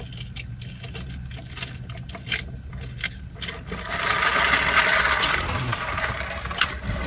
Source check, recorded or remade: recorded